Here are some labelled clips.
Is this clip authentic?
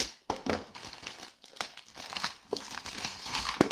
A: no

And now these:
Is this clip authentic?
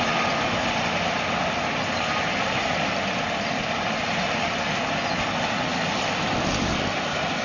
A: yes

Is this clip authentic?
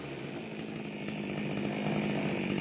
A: yes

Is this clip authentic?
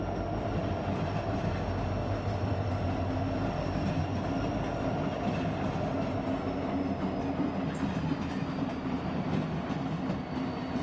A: yes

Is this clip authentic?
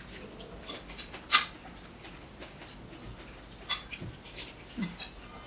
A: yes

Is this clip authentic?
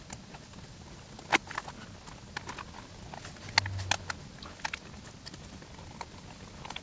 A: yes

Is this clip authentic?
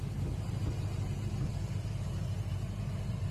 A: yes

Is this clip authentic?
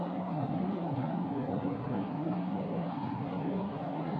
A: no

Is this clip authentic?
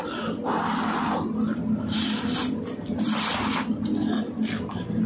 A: yes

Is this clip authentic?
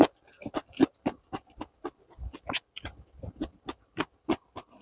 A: yes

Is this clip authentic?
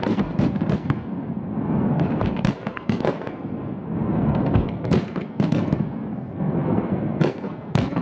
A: no